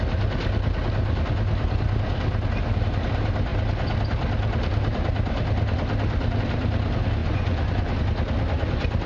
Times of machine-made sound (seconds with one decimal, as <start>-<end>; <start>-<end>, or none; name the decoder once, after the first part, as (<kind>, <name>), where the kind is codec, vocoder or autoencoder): 7.2-8.0 (vocoder, Vocos)